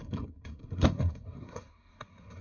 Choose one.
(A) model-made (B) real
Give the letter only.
A